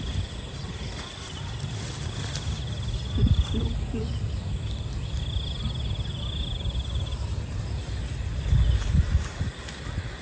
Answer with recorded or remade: recorded